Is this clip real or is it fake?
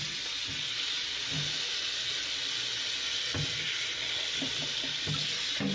real